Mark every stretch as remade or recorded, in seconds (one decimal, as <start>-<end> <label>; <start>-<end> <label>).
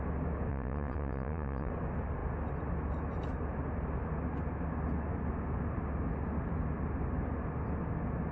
0.0-0.5 recorded; 0.5-1.7 remade; 1.7-8.3 recorded